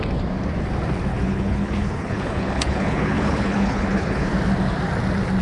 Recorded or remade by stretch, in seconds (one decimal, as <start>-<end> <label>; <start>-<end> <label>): 0.0-1.1 recorded; 1.1-4.3 remade; 4.3-5.4 recorded